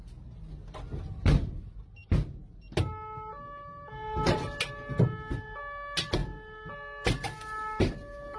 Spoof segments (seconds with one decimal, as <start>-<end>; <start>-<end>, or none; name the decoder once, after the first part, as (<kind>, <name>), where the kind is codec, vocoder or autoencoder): none